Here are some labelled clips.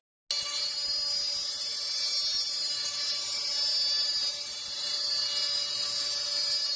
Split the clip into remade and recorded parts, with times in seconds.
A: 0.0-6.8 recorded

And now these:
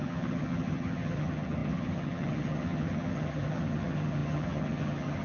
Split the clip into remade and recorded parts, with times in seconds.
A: 0.0-5.2 remade

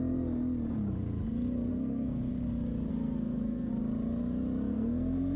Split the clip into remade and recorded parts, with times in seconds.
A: 0.0-1.7 recorded; 1.7-2.3 remade; 2.3-2.9 recorded; 2.9-3.7 remade; 3.7-4.7 recorded; 4.7-5.4 remade

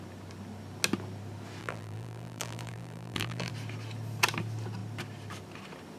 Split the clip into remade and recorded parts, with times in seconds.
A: 0.0-1.6 recorded; 1.6-3.5 remade; 3.5-6.0 recorded